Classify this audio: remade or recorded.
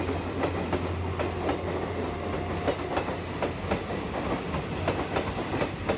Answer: recorded